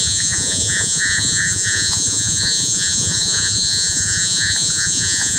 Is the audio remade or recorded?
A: remade